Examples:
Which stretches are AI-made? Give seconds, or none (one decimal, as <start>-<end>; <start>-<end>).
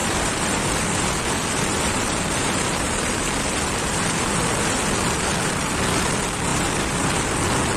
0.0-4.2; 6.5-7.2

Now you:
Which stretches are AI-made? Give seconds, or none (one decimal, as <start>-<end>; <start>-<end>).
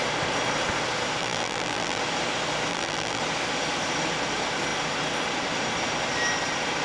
1.2-2.0; 2.7-3.2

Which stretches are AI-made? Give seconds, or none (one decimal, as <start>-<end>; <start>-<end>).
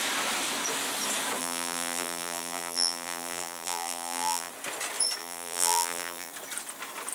1.4-4.5; 5.2-6.3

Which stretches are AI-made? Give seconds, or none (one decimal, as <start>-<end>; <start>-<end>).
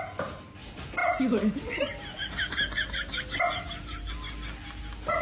1.0-4.1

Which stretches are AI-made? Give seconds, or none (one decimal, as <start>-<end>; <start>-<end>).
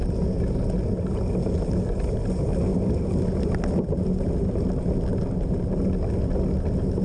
2.7-4.6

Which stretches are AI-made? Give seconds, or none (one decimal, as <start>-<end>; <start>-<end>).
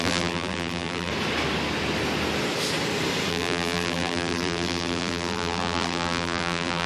0.0-1.1; 3.3-6.9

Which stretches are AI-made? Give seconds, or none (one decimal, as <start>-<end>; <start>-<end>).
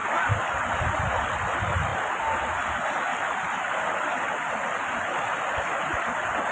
none